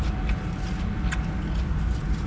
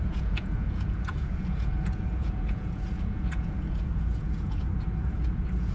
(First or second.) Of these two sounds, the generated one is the second